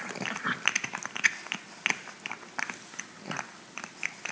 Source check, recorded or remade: recorded